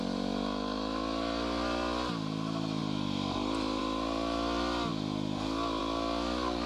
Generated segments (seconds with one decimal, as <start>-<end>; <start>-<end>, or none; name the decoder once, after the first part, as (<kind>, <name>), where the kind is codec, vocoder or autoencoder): none